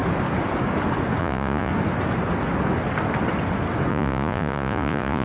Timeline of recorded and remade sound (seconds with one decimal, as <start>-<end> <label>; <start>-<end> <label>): 0.0-1.2 recorded; 1.2-1.7 remade; 1.7-3.9 recorded; 3.9-5.2 remade